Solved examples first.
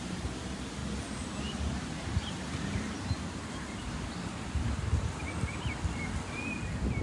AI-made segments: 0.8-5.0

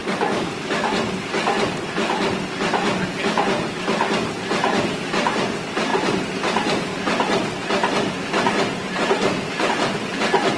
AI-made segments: none

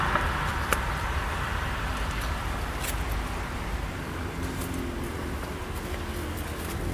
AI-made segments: 0.5-4.6

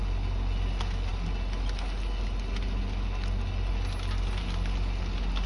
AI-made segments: none